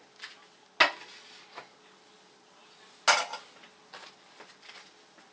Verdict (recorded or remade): recorded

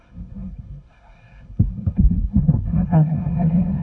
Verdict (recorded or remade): remade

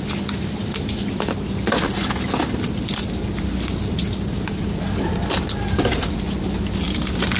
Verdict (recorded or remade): recorded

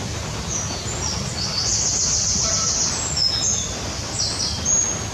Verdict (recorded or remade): recorded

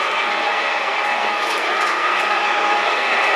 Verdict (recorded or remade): remade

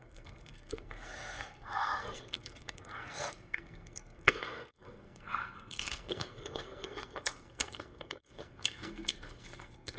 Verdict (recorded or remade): remade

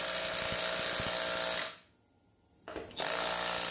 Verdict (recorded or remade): recorded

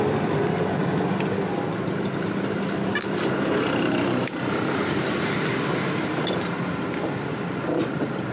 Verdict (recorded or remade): recorded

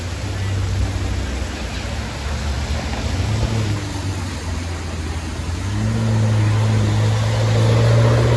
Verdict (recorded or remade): recorded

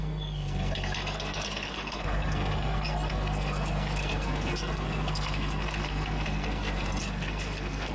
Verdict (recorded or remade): remade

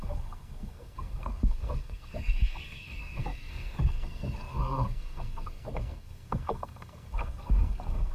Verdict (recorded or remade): remade